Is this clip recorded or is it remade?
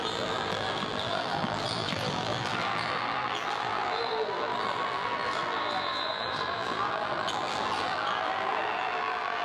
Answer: remade